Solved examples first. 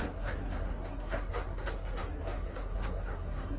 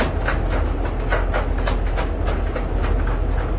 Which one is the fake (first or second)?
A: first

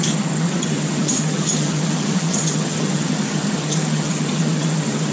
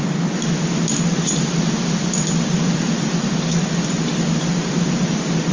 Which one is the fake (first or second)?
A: first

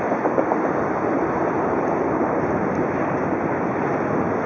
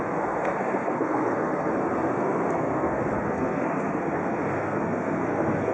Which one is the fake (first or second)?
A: second